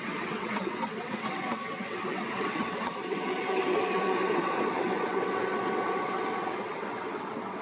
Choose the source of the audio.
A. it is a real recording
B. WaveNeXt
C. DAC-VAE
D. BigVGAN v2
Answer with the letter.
B